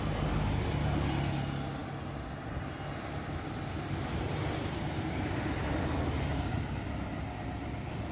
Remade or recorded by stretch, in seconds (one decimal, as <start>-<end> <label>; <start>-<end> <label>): 0.0-8.1 recorded